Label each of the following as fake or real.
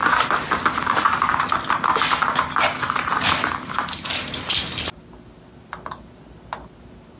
real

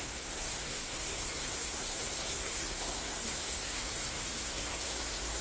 fake